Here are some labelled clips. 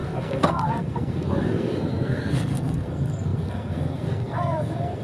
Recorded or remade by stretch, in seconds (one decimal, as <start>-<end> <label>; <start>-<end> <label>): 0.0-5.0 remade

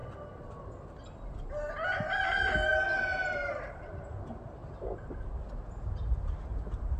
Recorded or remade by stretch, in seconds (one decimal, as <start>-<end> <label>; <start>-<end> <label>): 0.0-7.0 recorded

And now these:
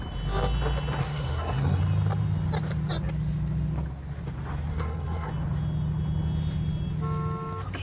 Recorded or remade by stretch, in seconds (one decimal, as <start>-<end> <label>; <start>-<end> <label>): 0.0-1.0 recorded; 1.0-1.8 remade; 1.8-4.7 recorded; 4.7-5.3 remade; 5.3-7.8 recorded

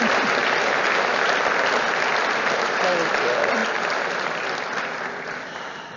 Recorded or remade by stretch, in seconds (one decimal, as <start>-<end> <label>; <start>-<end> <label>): 0.0-6.0 recorded